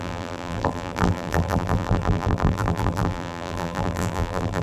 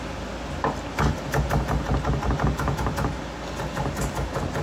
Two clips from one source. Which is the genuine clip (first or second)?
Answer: second